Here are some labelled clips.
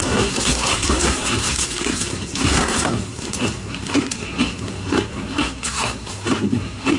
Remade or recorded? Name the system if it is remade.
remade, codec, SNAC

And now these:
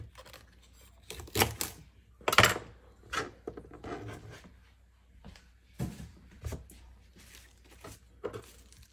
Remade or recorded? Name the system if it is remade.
recorded